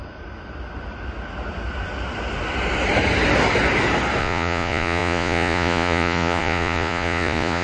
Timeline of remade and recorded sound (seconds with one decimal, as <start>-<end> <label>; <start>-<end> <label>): 0.0-4.2 recorded; 4.2-7.6 remade